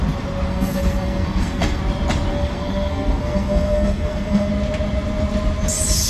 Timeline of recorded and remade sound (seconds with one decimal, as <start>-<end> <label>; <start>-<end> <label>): 0.0-0.5 recorded; 0.5-1.8 remade; 1.8-2.3 recorded; 2.3-4.5 remade; 4.5-6.1 recorded